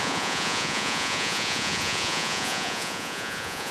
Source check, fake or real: fake